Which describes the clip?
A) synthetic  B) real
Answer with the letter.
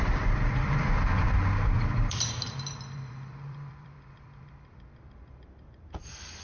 A